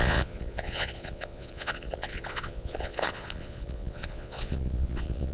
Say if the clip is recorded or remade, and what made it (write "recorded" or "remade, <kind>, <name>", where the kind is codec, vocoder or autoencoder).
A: remade, vocoder, Vocos